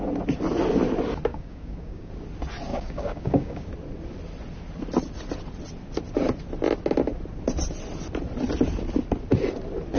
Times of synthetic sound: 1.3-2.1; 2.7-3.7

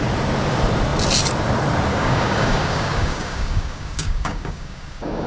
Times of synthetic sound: 1.9-5.3